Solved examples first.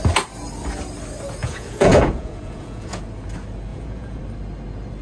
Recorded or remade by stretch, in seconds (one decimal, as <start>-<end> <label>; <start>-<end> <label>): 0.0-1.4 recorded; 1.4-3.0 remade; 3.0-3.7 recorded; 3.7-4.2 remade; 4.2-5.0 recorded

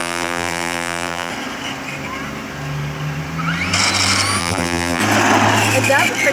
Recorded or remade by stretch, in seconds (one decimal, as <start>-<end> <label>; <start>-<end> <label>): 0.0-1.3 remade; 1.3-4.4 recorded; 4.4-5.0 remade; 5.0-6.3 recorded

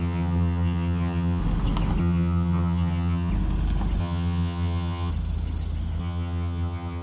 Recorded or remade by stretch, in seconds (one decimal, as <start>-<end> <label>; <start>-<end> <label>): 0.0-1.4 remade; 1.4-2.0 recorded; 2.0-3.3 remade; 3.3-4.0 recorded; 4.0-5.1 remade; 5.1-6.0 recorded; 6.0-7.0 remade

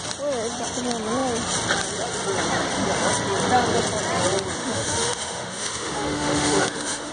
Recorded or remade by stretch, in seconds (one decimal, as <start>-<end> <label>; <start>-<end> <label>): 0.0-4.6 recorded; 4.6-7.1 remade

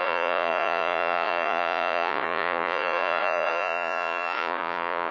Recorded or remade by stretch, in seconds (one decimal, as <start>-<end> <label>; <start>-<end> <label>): 0.0-5.1 remade

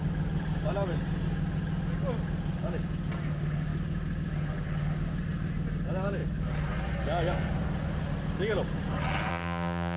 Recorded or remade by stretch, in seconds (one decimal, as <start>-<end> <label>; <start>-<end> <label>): 0.0-9.3 recorded; 9.3-10.0 remade

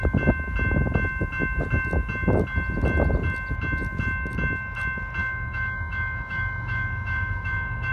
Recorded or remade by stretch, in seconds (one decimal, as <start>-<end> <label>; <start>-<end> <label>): 0.0-5.2 recorded; 5.2-7.9 remade